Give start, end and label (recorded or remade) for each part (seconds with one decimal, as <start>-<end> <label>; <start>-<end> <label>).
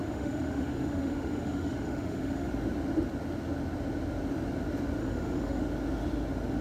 0.0-2.5 remade; 2.5-5.0 recorded; 5.0-5.6 remade; 5.6-6.6 recorded